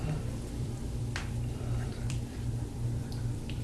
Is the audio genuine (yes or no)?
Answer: no